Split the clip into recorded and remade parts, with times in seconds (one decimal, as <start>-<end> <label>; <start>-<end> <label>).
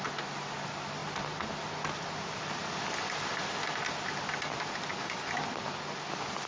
0.0-6.5 recorded